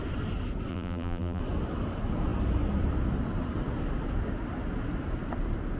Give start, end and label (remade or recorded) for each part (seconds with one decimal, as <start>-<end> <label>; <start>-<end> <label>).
0.0-0.7 recorded; 0.7-1.4 remade; 1.4-5.8 recorded